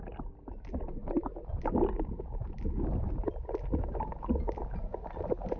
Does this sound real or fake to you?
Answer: real